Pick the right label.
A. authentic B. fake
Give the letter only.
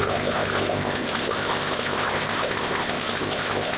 B